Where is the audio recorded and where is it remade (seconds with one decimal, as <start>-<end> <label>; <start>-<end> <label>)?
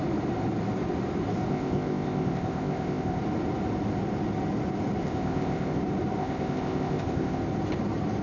0.0-1.5 recorded; 1.5-3.2 remade; 3.2-5.0 recorded; 5.0-5.8 remade; 5.8-6.2 recorded; 6.2-7.4 remade; 7.4-8.2 recorded